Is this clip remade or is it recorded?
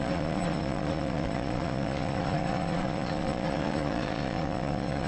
remade